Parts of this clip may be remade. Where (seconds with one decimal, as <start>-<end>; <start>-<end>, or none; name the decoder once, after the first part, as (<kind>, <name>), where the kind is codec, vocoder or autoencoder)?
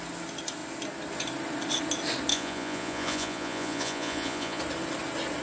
2.3-4.6 (vocoder, Vocos)